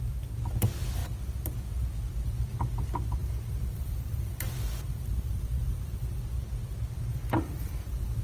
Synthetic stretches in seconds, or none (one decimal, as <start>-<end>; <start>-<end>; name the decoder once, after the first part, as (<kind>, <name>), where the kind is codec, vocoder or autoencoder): 3.2-6.2 (vocoder, BigVGAN v2); 7.1-8.2